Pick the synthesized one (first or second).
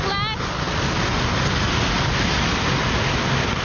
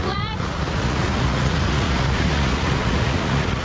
second